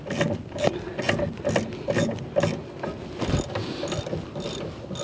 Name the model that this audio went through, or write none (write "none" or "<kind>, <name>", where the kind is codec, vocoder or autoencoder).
none